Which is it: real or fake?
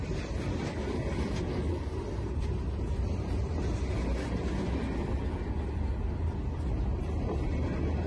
real